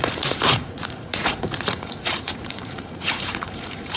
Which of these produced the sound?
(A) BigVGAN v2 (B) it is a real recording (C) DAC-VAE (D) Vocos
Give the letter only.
D